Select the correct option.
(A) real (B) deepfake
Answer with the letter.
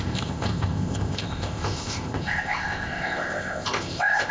B